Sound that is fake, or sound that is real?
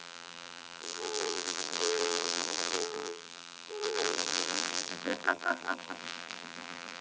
fake